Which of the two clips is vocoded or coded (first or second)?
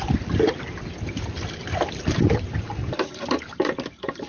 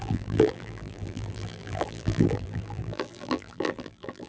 second